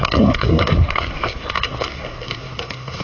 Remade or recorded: remade